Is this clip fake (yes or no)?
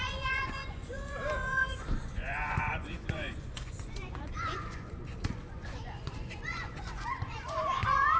yes